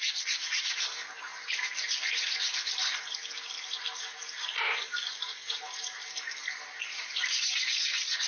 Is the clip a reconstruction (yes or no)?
yes